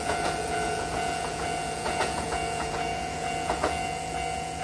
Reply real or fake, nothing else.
fake